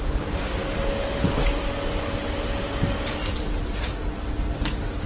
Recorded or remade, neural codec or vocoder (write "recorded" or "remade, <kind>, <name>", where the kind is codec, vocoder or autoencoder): recorded